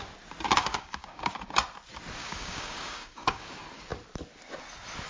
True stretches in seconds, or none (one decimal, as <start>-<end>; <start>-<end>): 0.0-0.6; 1.3-2.2; 3.5-5.1